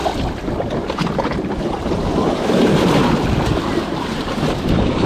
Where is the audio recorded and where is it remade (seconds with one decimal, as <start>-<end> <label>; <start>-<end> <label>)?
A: 0.0-5.1 recorded